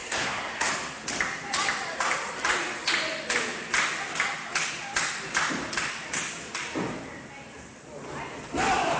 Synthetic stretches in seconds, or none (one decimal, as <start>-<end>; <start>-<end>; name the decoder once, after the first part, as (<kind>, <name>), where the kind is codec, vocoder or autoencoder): 0.0-0.7 (codec, SNAC)